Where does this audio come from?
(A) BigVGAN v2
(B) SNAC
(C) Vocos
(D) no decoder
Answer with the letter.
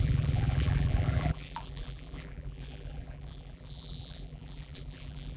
A